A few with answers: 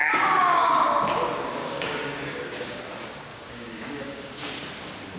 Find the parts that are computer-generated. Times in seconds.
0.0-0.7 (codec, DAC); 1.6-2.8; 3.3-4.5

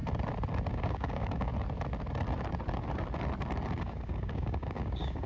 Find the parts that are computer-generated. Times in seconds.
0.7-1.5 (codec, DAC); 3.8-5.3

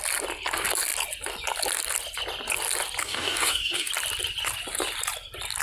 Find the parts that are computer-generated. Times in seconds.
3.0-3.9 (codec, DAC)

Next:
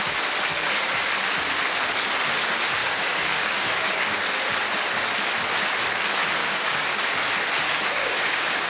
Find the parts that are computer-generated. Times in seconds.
2.8-4.2 (codec, DAC); 6.4-7.0; 7.7-8.7

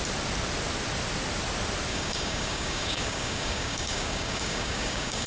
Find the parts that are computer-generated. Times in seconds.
1.9-5.3 (codec, DAC)

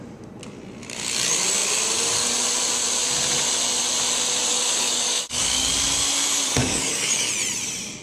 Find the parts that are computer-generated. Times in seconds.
4.5-5.7 (codec, DAC); 6.6-7.3

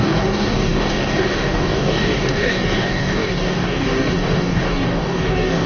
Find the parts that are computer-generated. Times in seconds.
0.0-5.7 (codec, DAC)